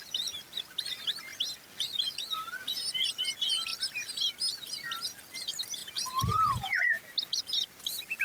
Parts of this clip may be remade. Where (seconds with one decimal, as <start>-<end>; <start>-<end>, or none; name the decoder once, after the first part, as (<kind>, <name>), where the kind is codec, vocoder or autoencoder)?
5.8-7.0 (vocoder, Vocos)